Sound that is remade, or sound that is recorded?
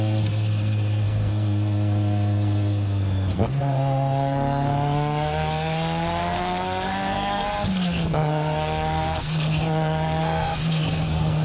remade